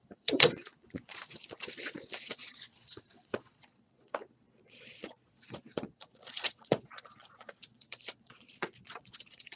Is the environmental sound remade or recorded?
remade